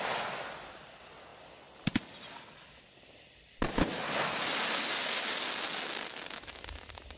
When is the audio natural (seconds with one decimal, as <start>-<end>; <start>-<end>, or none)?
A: 0.0-7.2